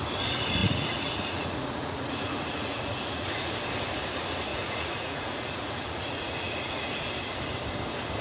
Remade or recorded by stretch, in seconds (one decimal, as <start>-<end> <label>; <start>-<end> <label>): 0.0-0.6 recorded; 0.6-3.5 remade; 3.5-4.5 recorded; 4.5-7.1 remade; 7.1-8.2 recorded